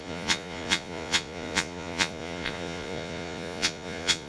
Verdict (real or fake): fake